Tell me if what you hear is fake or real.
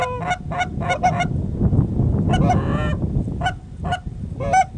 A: real